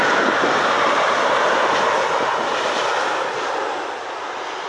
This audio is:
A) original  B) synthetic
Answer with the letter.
A